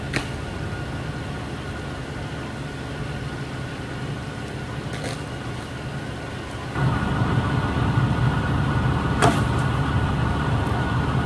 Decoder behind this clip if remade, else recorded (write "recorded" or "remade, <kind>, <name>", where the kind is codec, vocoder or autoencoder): recorded